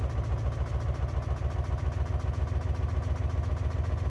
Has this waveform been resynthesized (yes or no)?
no